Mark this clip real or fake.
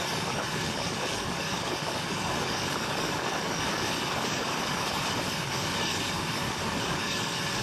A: fake